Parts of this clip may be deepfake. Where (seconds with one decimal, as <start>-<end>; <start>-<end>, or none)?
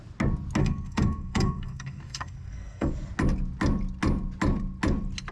0.6-2.9